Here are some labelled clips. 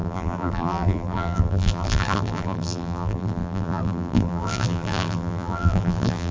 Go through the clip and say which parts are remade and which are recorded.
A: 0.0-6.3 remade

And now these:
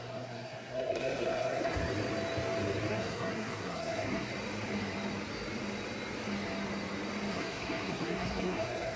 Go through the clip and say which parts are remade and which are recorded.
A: 0.0-1.8 remade; 1.8-2.9 recorded; 2.9-4.3 remade; 4.3-7.3 recorded; 7.3-9.0 remade

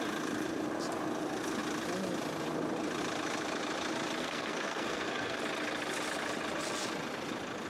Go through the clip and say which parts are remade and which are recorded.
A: 0.0-4.2 recorded; 4.2-5.4 remade; 5.4-7.7 recorded